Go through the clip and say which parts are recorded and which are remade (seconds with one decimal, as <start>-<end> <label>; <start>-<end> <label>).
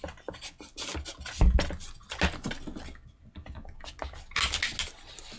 0.0-3.2 recorded; 3.2-4.3 remade; 4.3-5.4 recorded